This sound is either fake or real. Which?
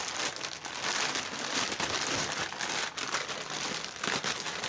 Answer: real